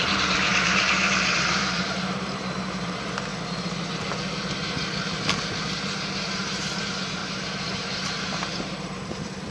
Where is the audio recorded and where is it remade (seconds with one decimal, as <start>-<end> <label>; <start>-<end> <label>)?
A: 0.0-3.3 remade; 3.3-5.6 recorded; 5.6-9.5 remade